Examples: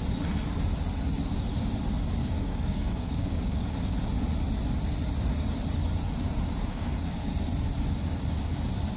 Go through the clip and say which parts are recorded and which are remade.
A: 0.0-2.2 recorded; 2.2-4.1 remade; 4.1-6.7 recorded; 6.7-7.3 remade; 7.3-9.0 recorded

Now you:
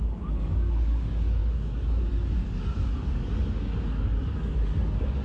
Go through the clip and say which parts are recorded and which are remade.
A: 0.0-5.2 remade

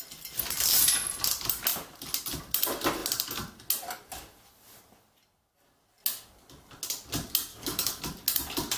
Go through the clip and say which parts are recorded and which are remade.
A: 0.0-7.5 recorded; 7.5-8.0 remade; 8.0-8.8 recorded

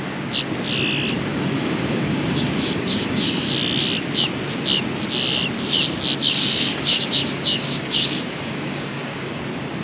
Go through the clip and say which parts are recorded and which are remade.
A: 0.0-1.3 recorded; 1.3-3.5 remade; 3.5-6.2 recorded; 6.2-9.4 remade; 9.4-9.8 recorded

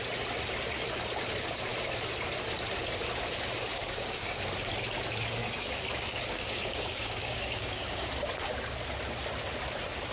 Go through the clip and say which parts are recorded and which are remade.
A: 0.0-3.7 recorded; 3.7-4.4 remade; 4.4-5.4 recorded; 5.4-8.1 remade; 8.1-10.1 recorded

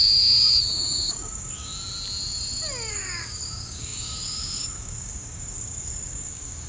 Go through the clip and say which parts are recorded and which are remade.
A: 0.0-1.7 remade; 1.7-2.9 recorded; 2.9-6.7 remade